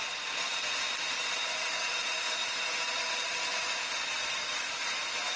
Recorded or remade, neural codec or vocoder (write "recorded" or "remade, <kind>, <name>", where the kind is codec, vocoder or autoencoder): recorded